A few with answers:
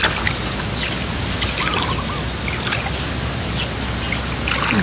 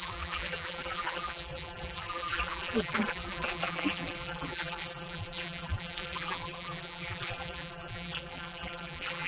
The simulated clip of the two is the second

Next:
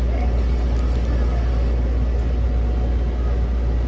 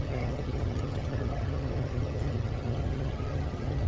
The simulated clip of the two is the second